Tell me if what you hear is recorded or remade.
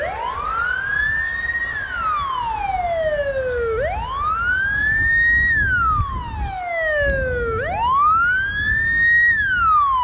recorded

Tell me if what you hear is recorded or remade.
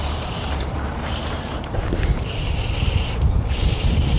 remade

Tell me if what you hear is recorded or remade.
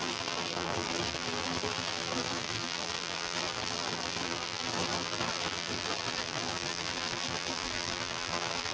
remade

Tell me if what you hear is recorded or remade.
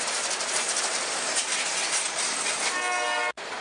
recorded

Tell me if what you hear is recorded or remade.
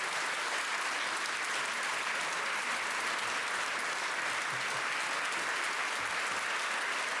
recorded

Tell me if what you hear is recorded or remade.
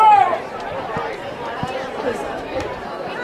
remade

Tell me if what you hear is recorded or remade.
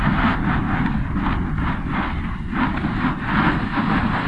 recorded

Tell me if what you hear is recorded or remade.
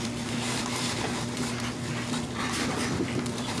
remade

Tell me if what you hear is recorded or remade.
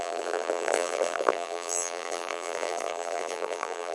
remade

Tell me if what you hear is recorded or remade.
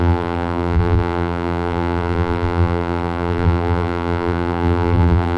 remade